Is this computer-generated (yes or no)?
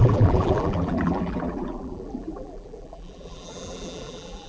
yes